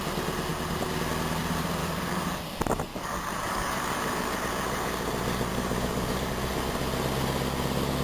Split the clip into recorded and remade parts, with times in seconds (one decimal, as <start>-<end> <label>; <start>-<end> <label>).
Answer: 0.0-1.8 recorded; 1.8-2.4 remade; 2.4-2.9 recorded; 2.9-4.4 remade; 4.4-5.5 recorded; 5.5-6.3 remade; 6.3-8.0 recorded

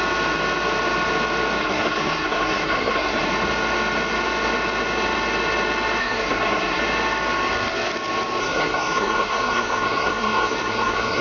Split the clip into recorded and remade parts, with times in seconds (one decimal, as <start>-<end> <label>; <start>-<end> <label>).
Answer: 0.0-1.6 recorded; 1.6-3.3 remade; 3.3-6.0 recorded; 6.0-6.8 remade; 6.8-8.4 recorded; 8.4-11.2 remade

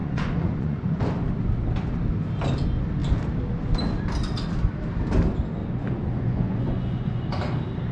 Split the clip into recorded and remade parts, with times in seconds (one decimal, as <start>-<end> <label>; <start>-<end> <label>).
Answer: 0.0-1.0 remade; 1.0-5.6 recorded; 5.6-7.2 remade; 7.2-7.9 recorded